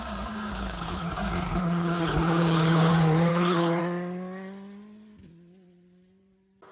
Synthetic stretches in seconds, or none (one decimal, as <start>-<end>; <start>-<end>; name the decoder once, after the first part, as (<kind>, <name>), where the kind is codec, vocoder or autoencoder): 0.5-1.1 (codec, HILCodec); 1.5-2.9; 3.3-3.8